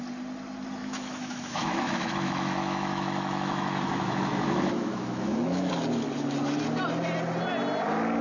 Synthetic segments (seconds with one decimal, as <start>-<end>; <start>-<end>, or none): 0.8-5.7